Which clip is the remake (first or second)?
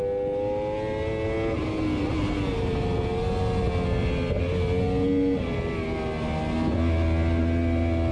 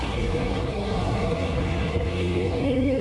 second